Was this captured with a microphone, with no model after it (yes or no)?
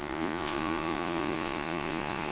no